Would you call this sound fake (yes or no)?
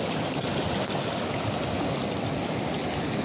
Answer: no